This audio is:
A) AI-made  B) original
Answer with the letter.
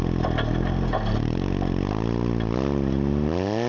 B